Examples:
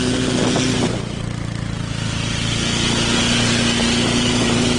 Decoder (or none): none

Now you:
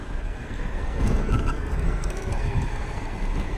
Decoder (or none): codec, SNAC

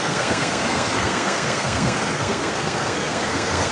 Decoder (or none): codec, SNAC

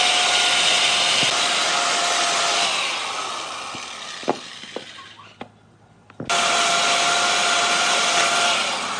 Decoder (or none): none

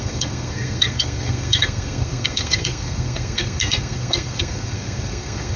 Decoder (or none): codec, SNAC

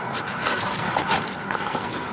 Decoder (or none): codec, SNAC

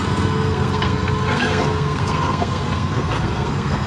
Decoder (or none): codec, SNAC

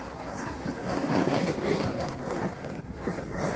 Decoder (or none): codec, SNAC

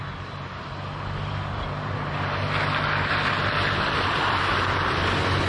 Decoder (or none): none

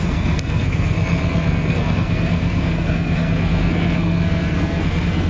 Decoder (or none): codec, SNAC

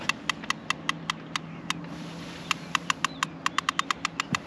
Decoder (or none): none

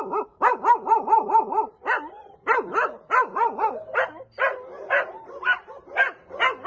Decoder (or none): none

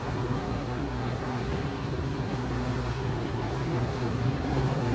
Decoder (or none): codec, SNAC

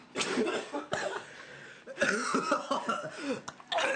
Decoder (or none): none